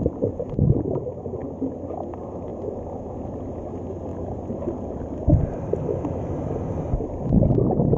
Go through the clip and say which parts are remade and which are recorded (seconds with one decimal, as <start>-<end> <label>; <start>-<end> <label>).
0.0-8.0 recorded